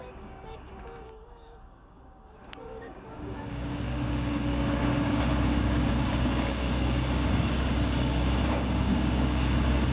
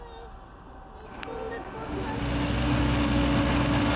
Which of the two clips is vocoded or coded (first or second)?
first